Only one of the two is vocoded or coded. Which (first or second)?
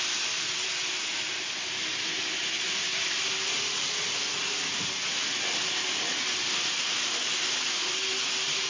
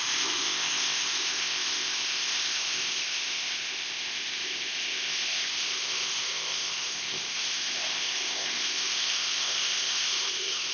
second